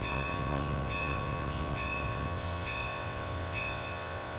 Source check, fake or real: fake